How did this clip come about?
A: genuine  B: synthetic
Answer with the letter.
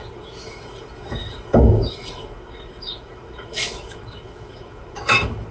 B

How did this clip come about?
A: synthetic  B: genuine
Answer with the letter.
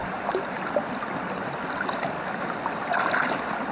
B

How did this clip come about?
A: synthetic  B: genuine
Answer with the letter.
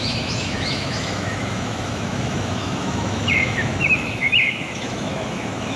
A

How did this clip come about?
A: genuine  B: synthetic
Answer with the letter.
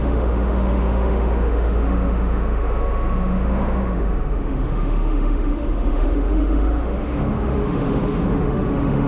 B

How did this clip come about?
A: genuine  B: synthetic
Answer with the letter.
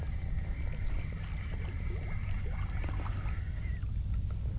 A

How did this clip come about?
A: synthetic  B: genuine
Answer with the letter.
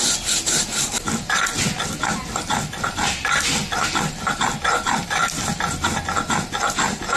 B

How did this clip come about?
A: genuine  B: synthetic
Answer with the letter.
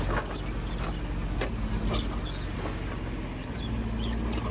A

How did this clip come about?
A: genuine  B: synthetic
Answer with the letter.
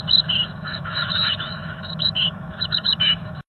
B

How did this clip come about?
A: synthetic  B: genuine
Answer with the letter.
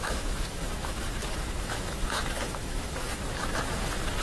A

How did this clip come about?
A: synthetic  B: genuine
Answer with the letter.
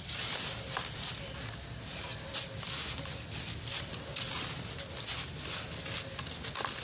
B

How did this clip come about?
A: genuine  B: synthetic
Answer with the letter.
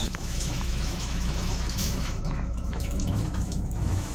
B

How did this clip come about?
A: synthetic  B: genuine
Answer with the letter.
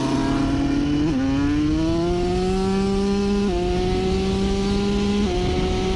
B